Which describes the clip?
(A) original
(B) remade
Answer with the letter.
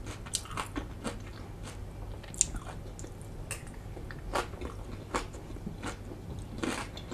A